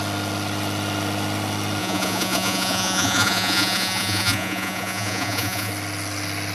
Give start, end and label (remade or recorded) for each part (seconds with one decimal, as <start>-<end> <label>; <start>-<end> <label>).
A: 0.0-1.8 recorded; 1.8-5.7 remade; 5.7-6.5 recorded